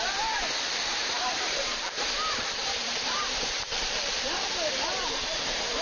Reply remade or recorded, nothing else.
remade